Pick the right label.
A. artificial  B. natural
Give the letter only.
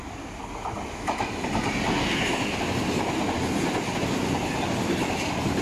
B